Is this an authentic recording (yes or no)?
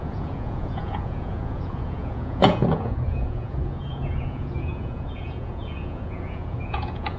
no